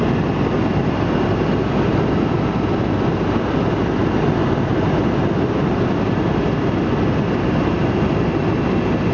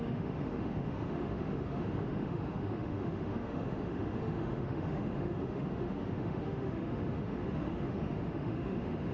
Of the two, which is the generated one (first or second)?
second